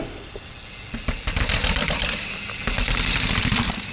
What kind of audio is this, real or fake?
real